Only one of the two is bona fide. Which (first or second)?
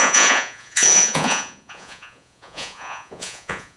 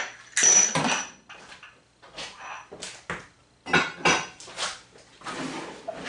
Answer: second